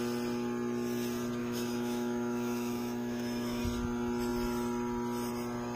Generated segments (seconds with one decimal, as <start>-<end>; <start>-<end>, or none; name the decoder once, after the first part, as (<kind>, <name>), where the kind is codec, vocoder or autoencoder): 1.4-3.6 (autoencoder, DAC-VAE)